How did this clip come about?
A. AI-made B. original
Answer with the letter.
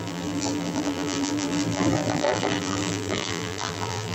A